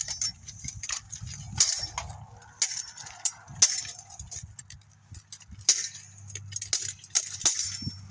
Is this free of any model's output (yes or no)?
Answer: yes